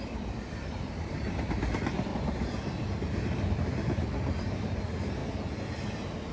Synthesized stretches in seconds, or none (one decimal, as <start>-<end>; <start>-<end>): 0.0-5.2